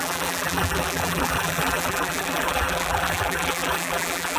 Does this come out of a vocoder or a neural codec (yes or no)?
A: yes